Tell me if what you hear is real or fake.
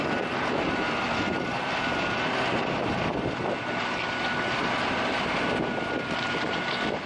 real